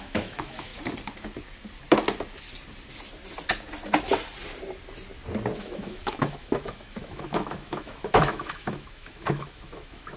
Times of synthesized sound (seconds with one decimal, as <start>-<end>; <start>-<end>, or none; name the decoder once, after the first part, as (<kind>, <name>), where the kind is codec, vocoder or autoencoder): 0.0-0.7 (autoencoder, DAC-VAE); 5.6-10.2